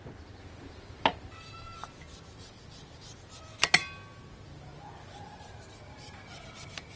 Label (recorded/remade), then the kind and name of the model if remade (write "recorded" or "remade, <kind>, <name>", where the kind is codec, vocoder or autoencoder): recorded